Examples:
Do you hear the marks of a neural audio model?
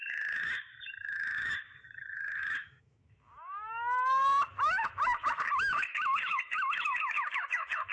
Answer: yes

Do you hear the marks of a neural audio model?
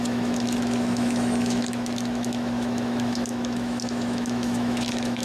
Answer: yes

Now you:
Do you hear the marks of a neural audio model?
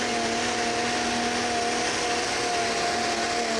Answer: no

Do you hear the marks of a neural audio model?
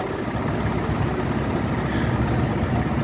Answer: no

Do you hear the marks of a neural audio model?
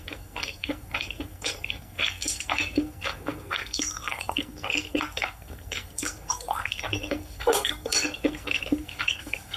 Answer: yes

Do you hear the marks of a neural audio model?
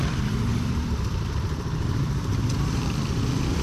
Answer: yes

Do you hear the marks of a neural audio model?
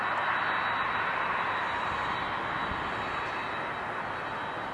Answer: no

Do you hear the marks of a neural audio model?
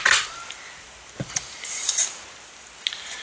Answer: no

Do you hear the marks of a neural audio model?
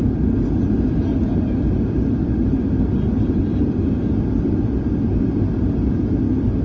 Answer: no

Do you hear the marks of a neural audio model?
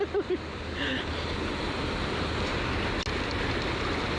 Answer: no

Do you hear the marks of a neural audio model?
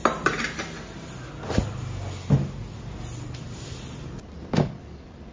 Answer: no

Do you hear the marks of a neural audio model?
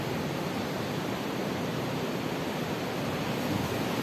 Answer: no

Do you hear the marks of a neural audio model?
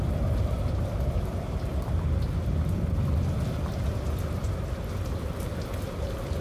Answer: no